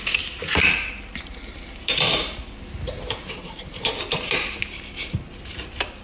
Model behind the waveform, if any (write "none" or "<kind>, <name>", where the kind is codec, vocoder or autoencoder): vocoder, BigVGAN v2